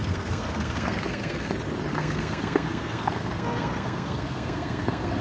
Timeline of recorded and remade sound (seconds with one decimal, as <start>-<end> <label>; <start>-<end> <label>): 0.0-1.5 remade; 1.5-1.9 recorded; 1.9-5.2 remade